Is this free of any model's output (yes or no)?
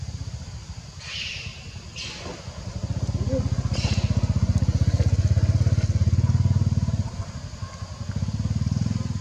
yes